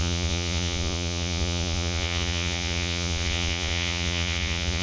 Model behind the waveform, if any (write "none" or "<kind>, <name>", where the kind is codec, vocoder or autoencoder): vocoder, Vocos